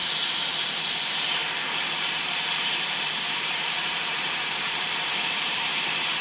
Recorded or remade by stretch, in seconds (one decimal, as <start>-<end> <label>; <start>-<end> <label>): 0.0-1.4 remade; 1.4-2.2 recorded; 2.2-6.2 remade